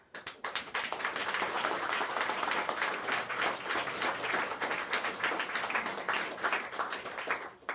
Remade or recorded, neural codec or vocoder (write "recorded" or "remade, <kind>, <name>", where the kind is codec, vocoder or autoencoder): recorded